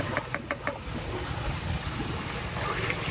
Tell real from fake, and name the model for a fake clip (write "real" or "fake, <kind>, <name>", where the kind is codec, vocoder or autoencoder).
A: real